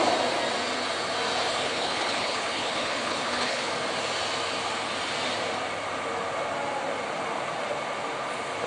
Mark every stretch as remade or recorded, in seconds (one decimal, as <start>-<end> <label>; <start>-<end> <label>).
0.0-1.5 recorded; 1.5-3.7 remade; 3.7-8.7 recorded